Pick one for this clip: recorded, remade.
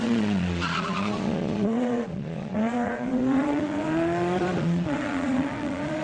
remade